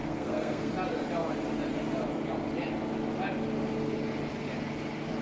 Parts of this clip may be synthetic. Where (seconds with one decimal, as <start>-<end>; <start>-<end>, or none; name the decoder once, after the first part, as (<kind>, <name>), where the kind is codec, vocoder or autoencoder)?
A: 0.0-0.7 (codec, SNAC)

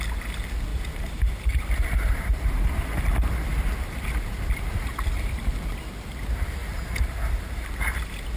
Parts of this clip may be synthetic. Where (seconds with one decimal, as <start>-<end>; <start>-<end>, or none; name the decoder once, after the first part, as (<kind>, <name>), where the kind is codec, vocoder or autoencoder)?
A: 0.7-3.0 (vocoder, BigVGAN v2)

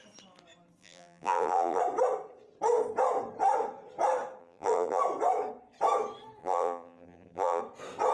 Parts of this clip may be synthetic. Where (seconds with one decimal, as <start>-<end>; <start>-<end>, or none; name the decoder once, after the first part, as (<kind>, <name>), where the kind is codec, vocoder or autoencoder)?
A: 0.8-1.8 (vocoder, BigVGAN v2); 4.4-5.0; 6.4-7.6

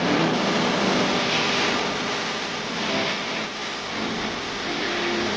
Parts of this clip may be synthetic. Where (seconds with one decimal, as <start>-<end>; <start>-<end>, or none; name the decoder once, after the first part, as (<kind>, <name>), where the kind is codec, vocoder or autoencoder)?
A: none

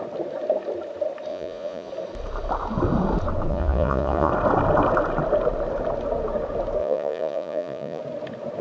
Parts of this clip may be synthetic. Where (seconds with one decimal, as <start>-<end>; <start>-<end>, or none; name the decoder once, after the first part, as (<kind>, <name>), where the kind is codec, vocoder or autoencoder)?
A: 1.3-1.9 (vocoder, Vocos); 3.5-4.3; 6.8-8.0

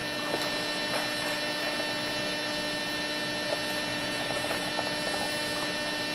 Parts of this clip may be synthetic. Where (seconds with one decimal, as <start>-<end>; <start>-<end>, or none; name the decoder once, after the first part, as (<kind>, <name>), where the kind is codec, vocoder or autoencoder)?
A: 3.9-4.7 (vocoder, Vocos)

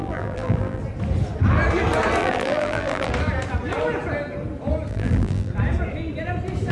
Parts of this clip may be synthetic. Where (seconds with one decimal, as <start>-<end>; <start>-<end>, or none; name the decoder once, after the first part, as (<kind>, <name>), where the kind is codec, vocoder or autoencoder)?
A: 0.0-0.8 (vocoder, BigVGAN v2); 2.2-3.1; 4.9-5.5